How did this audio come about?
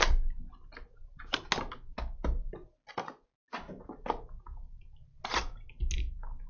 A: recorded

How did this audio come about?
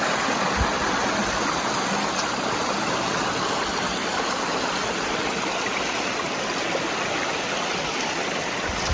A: recorded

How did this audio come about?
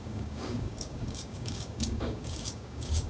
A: remade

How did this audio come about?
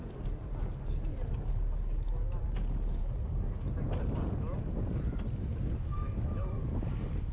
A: recorded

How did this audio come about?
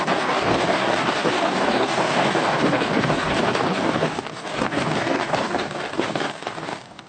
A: remade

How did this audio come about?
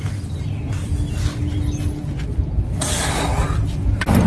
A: recorded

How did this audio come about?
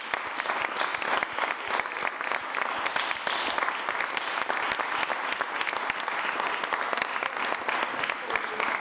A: recorded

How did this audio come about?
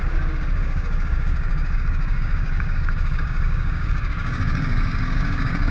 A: remade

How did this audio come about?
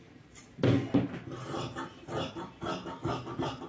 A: recorded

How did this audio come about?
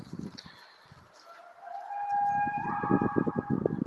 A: recorded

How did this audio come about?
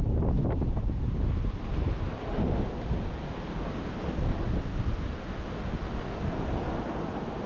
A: recorded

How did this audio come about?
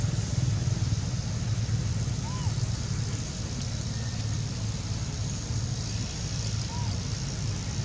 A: recorded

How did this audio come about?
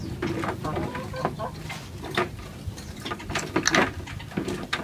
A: recorded